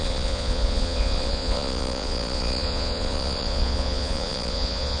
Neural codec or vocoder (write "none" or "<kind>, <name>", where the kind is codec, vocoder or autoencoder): vocoder, Vocos